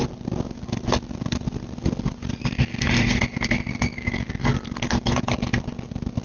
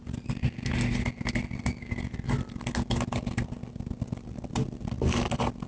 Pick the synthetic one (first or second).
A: first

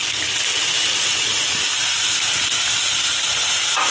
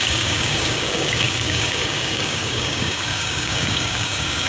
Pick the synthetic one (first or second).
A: second